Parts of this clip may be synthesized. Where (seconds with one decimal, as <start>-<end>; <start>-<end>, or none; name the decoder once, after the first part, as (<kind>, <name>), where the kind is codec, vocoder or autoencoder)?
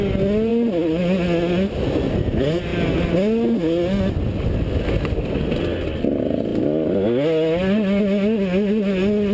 none